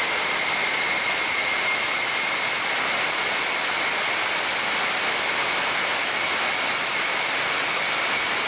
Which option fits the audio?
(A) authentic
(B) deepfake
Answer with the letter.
A